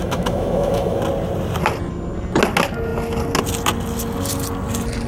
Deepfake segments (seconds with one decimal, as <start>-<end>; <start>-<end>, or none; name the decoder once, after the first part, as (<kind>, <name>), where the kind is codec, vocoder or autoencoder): 0.0-1.0 (autoencoder, DAC-VAE)